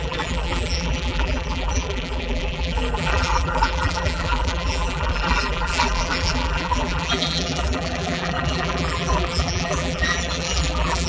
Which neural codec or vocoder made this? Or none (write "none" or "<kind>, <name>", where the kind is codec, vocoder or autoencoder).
vocoder, BigVGAN v2